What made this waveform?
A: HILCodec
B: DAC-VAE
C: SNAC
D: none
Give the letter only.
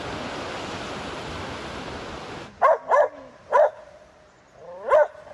D